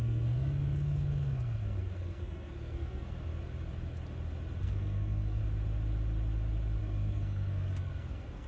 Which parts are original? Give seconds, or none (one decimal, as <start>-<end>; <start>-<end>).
3.3-4.6; 5.4-6.8